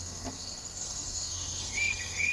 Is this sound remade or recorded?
remade